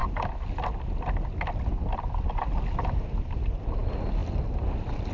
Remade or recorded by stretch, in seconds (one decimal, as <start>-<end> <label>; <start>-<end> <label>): 0.0-4.2 recorded; 4.2-5.1 remade